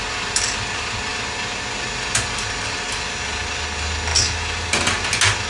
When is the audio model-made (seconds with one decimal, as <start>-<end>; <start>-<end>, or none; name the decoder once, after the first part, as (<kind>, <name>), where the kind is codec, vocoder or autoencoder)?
none